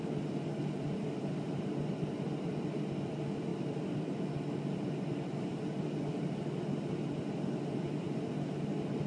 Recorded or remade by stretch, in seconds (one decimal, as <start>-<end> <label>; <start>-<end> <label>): 0.0-3.5 recorded; 3.5-4.2 remade; 4.2-5.5 recorded; 5.5-6.3 remade; 6.3-9.1 recorded